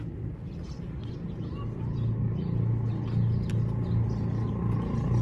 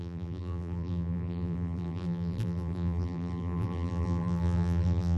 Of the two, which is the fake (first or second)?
second